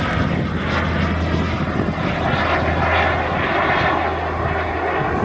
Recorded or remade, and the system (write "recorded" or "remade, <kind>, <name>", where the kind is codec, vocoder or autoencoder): recorded